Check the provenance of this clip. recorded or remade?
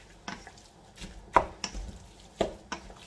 recorded